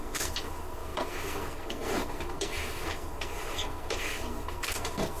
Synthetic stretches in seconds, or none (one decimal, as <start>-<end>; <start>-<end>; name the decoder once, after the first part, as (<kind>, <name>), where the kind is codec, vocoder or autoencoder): 0.0-5.2 (codec, SNAC)